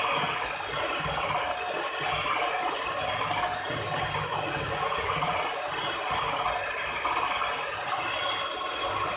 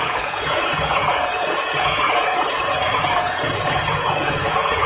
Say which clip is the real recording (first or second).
first